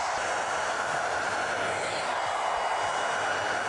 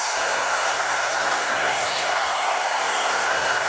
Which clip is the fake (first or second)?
second